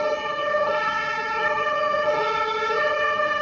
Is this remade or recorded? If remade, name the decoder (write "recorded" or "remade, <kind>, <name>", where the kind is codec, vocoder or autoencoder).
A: remade, vocoder, HiFi-GAN